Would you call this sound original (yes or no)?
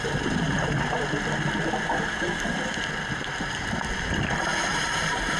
yes